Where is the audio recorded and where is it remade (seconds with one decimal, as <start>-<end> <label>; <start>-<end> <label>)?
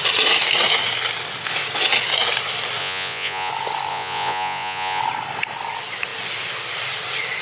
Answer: 0.0-2.8 recorded; 2.8-3.5 remade; 3.5-3.9 recorded; 3.9-5.0 remade; 5.0-7.4 recorded